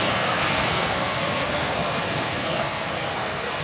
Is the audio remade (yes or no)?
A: yes